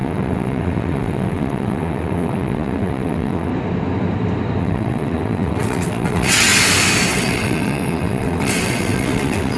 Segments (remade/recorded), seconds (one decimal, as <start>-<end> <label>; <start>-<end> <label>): 0.0-3.5 remade; 3.5-4.6 recorded; 4.6-6.5 remade; 6.5-7.1 recorded; 7.1-9.6 remade